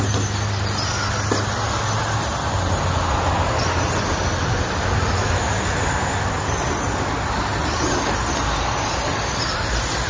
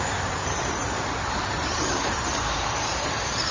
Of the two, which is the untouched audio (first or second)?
first